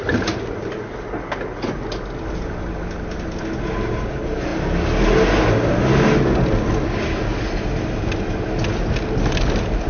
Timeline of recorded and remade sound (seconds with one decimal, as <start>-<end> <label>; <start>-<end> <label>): 0.0-9.9 recorded